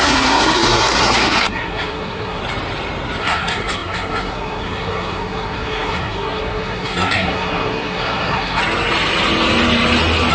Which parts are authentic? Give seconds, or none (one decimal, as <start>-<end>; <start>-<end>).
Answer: 2.4-3.2; 8.6-10.3